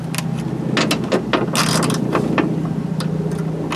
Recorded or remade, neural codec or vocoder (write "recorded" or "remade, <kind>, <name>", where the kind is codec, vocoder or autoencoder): recorded